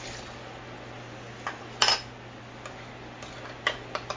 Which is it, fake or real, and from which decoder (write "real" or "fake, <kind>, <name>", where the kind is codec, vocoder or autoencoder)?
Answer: real